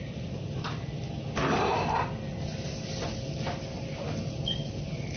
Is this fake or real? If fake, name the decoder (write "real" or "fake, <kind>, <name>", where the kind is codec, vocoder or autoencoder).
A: real